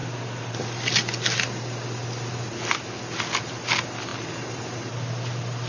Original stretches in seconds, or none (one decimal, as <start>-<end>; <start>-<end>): 0.0-5.7

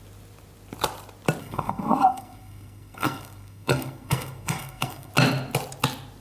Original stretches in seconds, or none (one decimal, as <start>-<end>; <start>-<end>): 0.0-1.4; 5.1-6.2

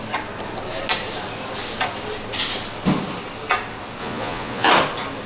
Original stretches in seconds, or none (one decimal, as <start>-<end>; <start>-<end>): 0.0-4.0; 4.7-5.3

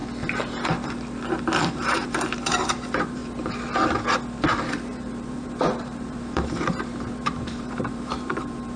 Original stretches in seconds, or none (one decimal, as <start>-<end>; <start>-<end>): 0.0-1.4; 3.2-4.7

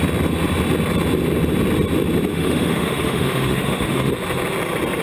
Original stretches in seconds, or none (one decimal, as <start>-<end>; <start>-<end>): 0.0-2.3; 4.1-5.0

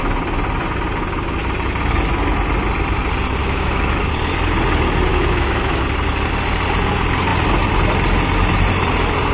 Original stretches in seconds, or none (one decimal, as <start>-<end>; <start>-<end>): 0.0-3.4; 4.1-5.1; 5.8-9.3

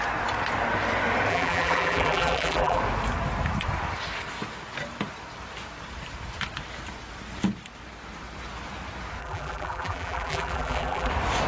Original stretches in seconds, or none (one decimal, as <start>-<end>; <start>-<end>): 0.0-1.3; 2.8-9.2; 11.1-11.5

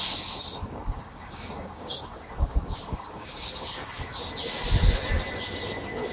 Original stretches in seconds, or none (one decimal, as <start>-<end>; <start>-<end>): 0.0-0.6; 4.3-6.1